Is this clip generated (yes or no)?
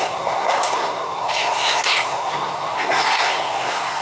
yes